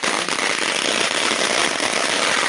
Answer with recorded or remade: recorded